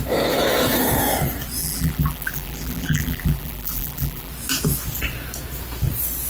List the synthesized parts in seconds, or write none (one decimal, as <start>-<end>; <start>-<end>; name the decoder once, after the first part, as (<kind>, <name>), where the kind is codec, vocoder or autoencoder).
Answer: 1.6-4.3 (vocoder, BigVGAN v2)